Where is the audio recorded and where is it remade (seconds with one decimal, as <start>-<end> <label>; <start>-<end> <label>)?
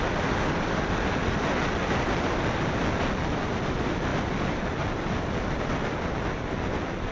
0.0-7.1 recorded